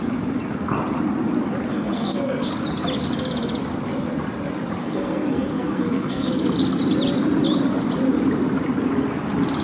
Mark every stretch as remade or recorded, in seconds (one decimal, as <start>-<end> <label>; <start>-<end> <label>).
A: 0.0-1.7 recorded; 1.7-2.5 remade; 2.5-4.8 recorded; 4.8-6.3 remade; 6.3-9.6 recorded